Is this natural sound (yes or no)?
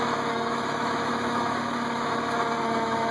no